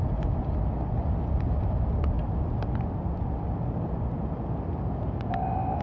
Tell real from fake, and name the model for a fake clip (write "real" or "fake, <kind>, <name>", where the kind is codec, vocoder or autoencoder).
real